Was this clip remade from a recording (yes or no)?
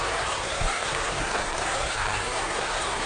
yes